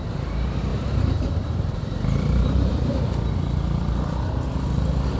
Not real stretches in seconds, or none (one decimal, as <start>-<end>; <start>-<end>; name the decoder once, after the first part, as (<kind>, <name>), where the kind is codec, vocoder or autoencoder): 0.0-0.7 (vocoder, BigVGAN v2); 1.4-2.7